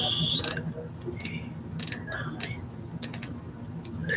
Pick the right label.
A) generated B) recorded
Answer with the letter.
B